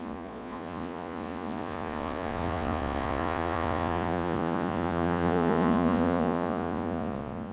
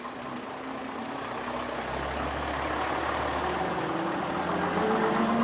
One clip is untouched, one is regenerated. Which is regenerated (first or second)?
first